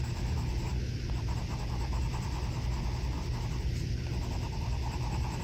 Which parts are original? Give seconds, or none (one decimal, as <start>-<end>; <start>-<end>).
0.0-5.4